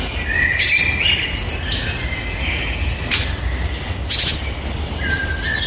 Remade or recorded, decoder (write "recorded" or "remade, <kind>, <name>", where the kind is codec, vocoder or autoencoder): recorded